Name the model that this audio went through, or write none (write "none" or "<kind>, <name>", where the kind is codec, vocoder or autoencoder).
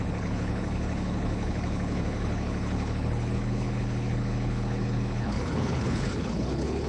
codec, HILCodec